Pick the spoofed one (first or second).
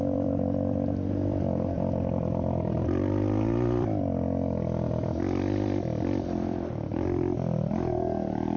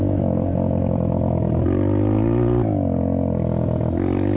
first